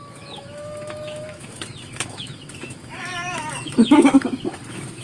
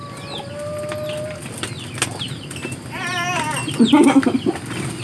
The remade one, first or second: first